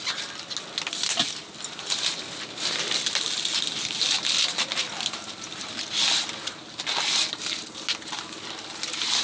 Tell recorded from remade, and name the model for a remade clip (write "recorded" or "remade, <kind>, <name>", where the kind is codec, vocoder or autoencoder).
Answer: recorded